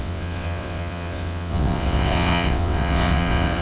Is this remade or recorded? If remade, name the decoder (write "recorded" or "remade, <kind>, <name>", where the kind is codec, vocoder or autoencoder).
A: remade, vocoder, WaveNeXt